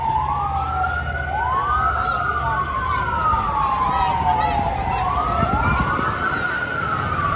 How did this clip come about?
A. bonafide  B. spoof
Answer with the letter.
A